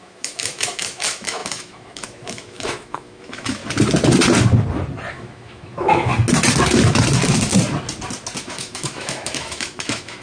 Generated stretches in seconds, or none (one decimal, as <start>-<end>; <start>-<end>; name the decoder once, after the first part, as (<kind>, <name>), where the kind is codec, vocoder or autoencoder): 0.0-3.6 (autoencoder, DAC-VAE); 5.1-6.1; 8.4-10.2